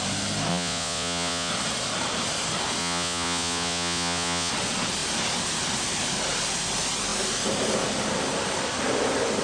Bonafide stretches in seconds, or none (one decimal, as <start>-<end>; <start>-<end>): 0.0-0.5; 1.5-2.8; 4.5-9.4